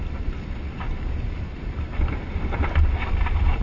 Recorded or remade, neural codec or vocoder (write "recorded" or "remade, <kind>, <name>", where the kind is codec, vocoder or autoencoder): recorded